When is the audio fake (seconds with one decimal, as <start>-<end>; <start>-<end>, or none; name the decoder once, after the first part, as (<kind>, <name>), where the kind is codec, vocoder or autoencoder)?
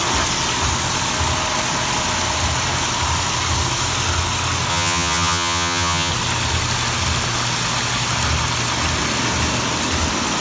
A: 4.7-6.1 (vocoder, HiFi-GAN)